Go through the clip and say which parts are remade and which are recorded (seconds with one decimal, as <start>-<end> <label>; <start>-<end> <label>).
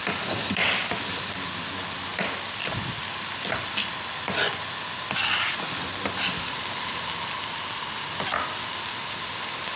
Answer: 0.0-9.8 recorded